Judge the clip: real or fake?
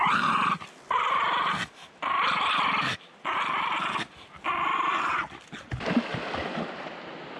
real